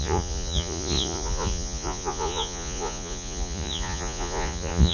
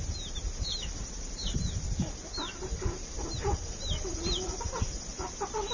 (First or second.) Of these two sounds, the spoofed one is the first